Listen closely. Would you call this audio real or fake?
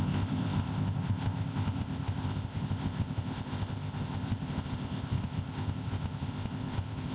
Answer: fake